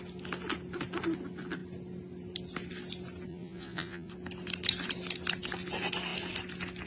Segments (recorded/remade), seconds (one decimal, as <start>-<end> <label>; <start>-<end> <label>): 0.0-3.3 recorded; 3.3-4.1 remade; 4.1-6.9 recorded